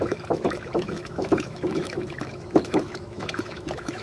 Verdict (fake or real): fake